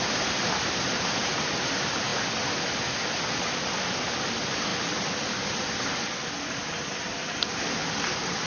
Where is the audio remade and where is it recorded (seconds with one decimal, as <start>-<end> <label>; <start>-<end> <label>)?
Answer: 0.0-8.5 recorded